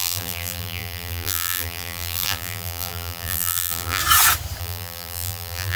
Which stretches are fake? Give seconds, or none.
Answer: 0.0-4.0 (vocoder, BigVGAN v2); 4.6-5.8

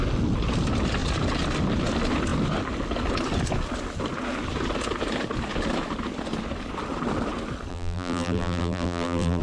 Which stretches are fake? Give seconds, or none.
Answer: 7.7-9.4 (vocoder, BigVGAN v2)

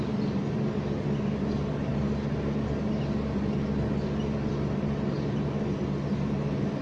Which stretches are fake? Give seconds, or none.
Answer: none

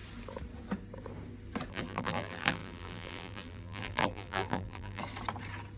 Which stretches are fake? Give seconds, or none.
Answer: 1.7-5.0 (vocoder, BigVGAN v2)